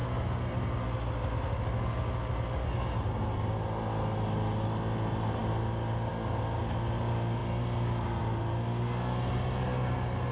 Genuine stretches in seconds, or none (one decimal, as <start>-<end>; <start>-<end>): 0.0-10.3